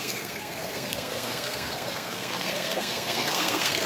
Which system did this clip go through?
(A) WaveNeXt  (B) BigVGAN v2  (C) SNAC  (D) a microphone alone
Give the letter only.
C